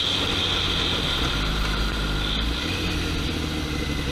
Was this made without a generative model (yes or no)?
yes